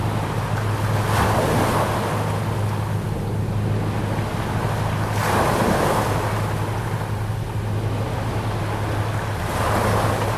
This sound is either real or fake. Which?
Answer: real